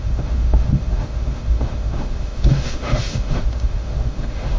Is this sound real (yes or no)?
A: no